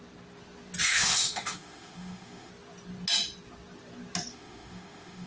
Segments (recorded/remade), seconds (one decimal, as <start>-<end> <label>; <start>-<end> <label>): 0.0-0.8 recorded; 0.8-2.5 remade; 2.5-4.3 recorded; 4.3-5.3 remade